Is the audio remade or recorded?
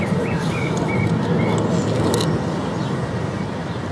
recorded